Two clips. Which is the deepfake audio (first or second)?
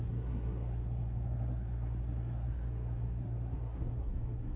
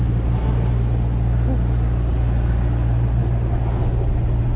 first